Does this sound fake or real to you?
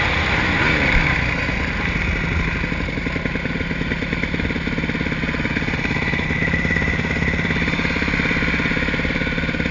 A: real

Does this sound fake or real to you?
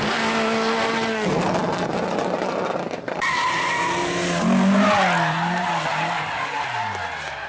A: real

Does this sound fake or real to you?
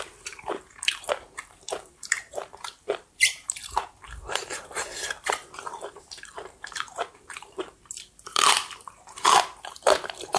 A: fake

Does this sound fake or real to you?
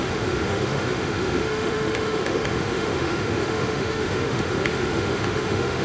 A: fake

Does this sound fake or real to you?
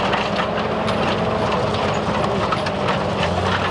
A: real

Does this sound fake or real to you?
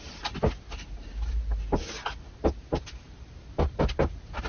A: real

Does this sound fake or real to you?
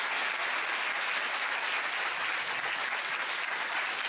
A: real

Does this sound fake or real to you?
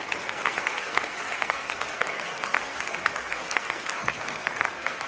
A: fake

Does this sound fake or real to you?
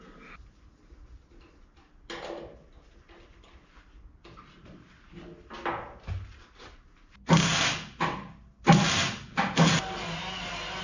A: real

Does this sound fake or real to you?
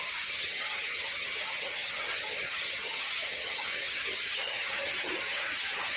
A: fake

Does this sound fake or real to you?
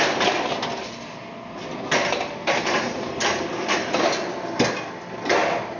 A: real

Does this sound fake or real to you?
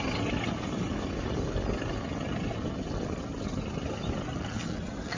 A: real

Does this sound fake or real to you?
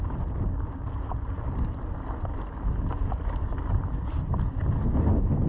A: real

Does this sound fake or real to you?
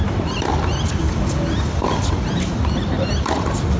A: fake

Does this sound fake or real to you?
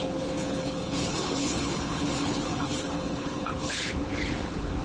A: fake